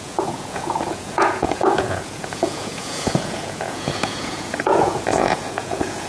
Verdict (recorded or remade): remade